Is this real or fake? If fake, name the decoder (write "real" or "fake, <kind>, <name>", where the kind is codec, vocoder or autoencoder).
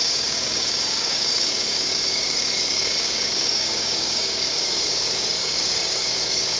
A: fake, codec, DAC